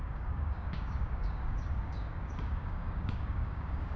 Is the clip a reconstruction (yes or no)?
yes